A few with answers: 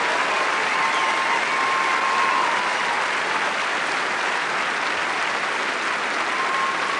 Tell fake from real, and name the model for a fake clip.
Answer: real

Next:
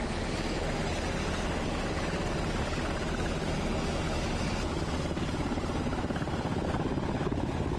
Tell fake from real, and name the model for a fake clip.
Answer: real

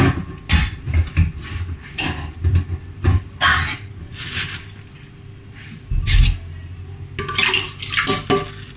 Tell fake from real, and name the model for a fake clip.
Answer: real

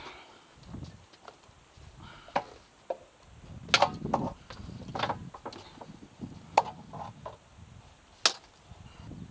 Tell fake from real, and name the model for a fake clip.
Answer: real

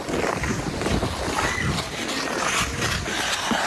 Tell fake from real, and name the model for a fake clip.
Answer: real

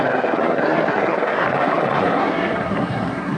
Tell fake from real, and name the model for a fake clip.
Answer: fake, codec, SNAC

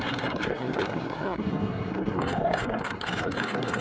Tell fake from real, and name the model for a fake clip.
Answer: fake, codec, SNAC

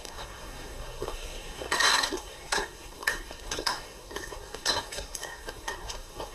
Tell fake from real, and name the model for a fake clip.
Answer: fake, codec, SNAC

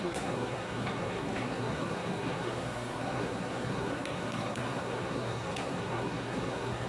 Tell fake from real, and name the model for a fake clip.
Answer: fake, codec, SNAC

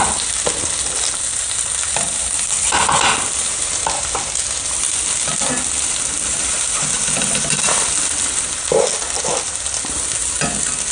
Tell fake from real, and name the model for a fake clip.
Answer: real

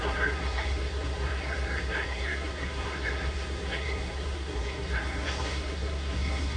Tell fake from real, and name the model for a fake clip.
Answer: fake, codec, SNAC